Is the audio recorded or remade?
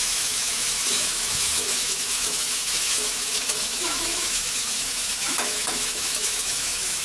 remade